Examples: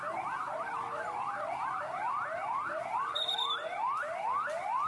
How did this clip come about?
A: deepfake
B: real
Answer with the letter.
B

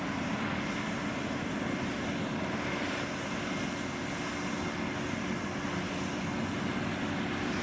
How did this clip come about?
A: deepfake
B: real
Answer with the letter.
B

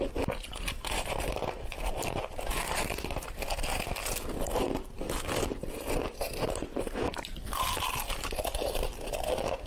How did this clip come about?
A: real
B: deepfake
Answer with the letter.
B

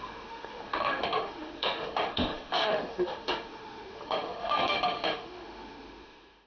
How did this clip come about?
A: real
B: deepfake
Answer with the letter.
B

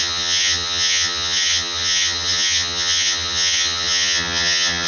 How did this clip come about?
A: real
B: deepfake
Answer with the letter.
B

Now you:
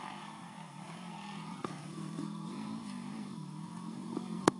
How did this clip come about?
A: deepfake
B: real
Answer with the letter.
A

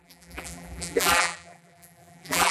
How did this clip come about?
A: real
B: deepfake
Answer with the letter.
B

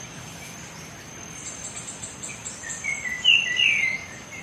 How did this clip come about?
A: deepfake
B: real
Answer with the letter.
B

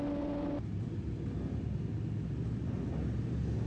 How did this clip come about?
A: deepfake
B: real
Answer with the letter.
B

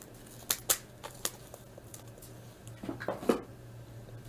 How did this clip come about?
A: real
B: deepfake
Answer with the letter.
A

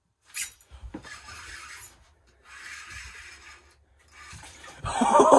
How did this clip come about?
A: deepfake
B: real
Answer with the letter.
A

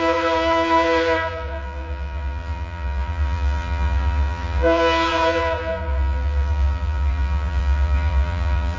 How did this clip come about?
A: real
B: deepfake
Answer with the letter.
B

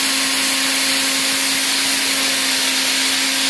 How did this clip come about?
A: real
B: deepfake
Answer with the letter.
A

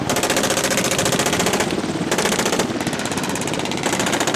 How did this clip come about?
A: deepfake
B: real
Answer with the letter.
B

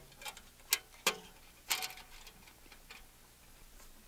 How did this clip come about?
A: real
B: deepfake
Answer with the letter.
A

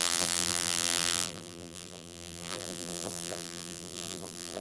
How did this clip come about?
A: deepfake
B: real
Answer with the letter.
A